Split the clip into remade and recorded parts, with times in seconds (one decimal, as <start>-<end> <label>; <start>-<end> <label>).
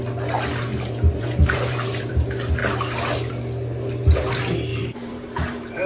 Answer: 0.0-0.7 recorded; 0.7-2.1 remade; 2.1-4.7 recorded; 4.7-5.9 remade